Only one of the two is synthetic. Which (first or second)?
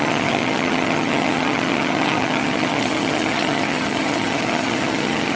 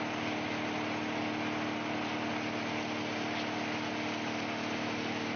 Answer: first